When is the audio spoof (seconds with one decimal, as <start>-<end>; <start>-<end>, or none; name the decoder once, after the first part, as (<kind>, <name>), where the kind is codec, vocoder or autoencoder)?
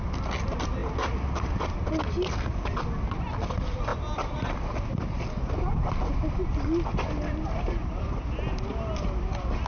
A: none